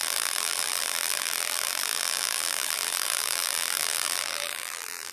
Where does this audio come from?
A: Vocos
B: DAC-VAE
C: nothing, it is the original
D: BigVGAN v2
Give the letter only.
D